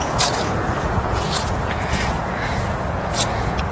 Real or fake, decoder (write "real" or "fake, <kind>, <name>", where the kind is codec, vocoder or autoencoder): fake, vocoder, Vocos